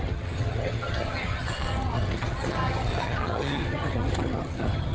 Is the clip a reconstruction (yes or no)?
yes